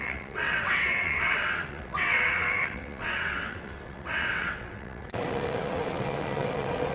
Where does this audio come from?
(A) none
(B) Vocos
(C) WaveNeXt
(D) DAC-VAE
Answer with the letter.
C